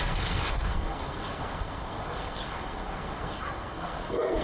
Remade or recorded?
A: remade